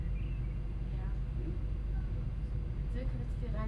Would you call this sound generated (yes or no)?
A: no